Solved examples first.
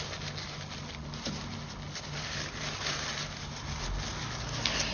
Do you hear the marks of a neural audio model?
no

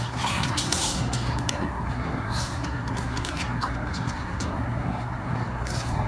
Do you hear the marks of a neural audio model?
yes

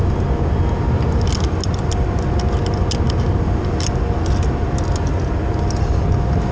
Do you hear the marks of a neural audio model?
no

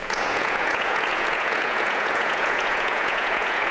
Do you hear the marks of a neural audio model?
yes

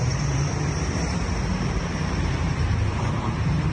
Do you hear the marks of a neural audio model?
yes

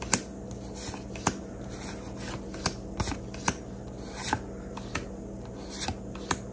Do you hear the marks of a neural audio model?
no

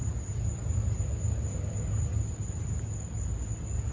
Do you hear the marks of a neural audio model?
no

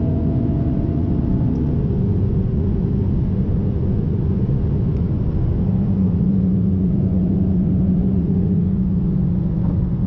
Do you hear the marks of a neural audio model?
yes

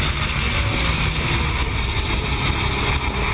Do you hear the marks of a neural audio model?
no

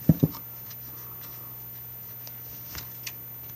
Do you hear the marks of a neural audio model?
no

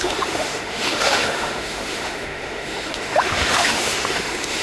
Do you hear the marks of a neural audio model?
yes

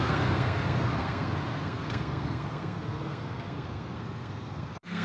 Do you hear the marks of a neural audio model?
yes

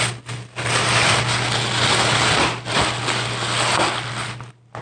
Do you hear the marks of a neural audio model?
no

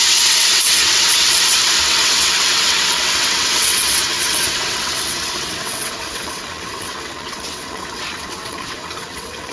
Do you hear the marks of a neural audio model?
yes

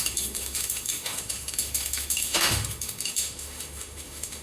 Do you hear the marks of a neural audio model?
yes